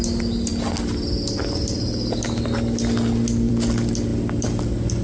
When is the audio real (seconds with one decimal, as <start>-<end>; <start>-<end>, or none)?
0.0-5.0